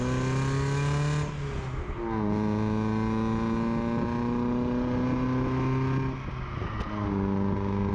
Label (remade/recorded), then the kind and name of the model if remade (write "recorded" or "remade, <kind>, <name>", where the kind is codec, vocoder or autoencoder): recorded